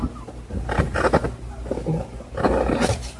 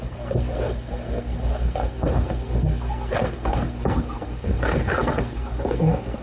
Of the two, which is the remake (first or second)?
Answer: second